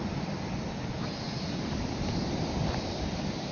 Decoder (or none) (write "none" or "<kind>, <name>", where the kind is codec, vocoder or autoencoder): vocoder, BigVGAN v2